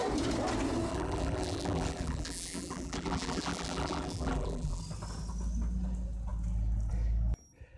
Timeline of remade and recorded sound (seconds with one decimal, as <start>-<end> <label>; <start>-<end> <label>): 0.0-0.9 recorded; 0.9-4.8 remade; 4.8-7.8 recorded